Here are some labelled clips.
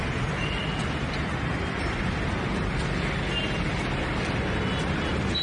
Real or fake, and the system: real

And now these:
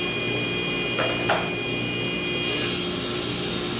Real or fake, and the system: real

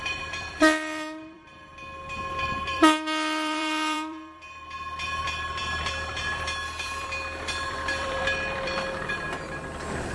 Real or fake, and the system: fake, vocoder, BigVGAN v2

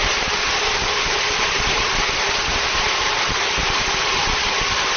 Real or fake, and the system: fake, vocoder, BigVGAN v2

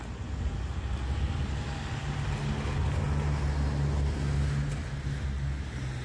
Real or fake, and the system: real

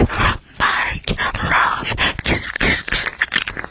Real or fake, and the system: real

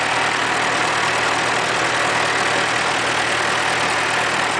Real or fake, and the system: real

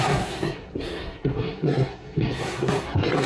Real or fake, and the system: fake, codec, SNAC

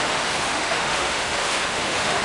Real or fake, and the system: fake, autoencoder, DAC-VAE